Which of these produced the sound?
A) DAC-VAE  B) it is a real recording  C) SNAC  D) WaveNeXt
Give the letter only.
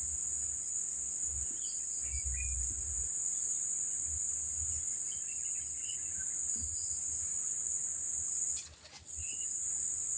B